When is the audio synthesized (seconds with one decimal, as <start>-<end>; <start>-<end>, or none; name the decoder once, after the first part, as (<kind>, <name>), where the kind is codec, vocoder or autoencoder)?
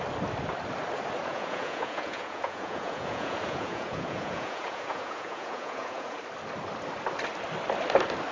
1.2-6.2 (vocoder, Vocos)